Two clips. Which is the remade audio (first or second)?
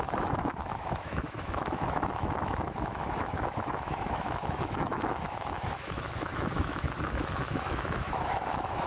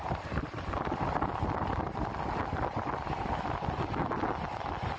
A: first